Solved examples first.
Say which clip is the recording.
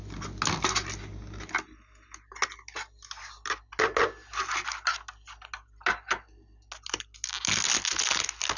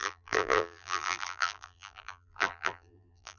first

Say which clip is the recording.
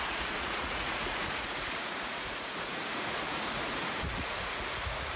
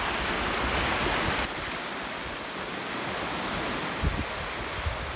second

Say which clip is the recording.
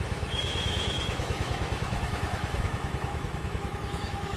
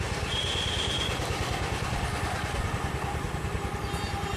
second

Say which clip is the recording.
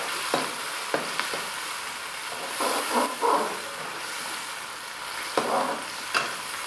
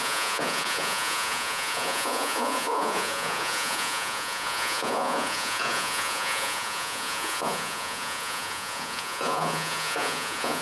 first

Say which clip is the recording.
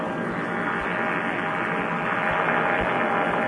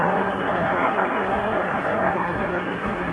first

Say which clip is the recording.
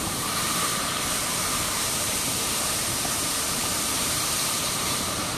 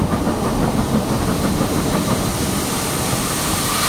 second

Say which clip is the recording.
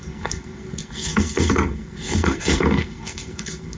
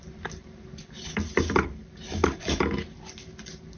second